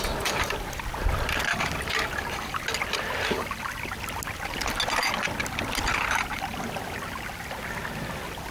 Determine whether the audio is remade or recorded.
recorded